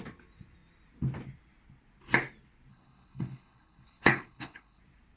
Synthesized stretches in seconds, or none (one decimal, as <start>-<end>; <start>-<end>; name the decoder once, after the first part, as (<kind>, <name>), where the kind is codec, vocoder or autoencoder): 2.7-4.8 (codec, HILCodec)